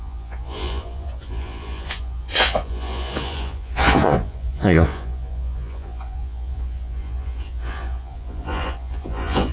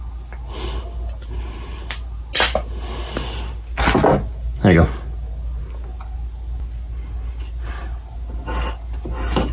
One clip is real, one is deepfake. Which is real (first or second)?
second